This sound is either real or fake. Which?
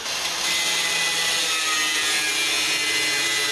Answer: real